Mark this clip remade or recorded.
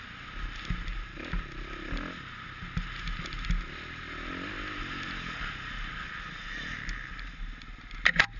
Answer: recorded